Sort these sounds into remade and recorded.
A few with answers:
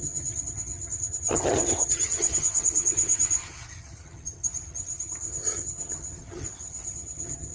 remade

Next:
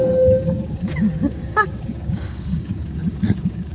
remade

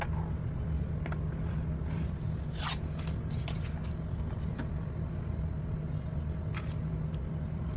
recorded